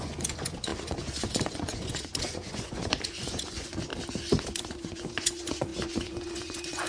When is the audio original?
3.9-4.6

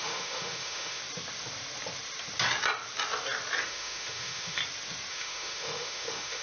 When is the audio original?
1.0-3.6; 4.6-5.1

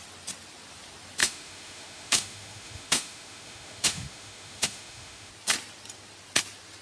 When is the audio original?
0.0-1.2; 5.3-6.8

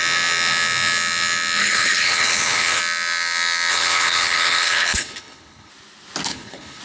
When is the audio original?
0.0-1.6; 2.8-3.7; 5.7-6.3

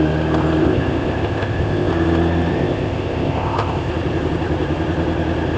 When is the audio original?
0.0-0.6; 1.9-2.5; 3.9-5.6

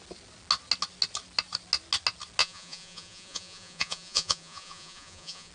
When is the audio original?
0.0-2.4

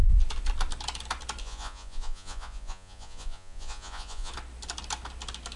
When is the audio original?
0.0-1.4; 4.3-5.6

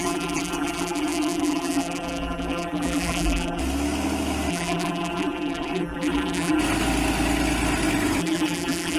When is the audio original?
3.6-4.5; 6.6-8.2